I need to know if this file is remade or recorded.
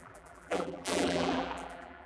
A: remade